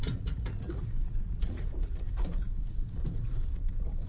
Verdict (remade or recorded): remade